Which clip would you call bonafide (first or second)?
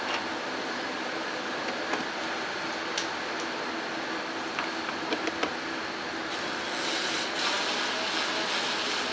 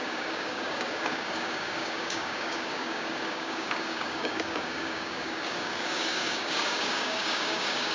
first